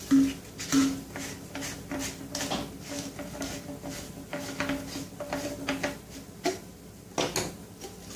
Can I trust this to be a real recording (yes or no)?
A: yes